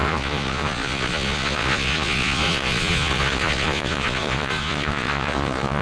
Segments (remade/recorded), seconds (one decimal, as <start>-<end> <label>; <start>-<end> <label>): 0.0-5.8 remade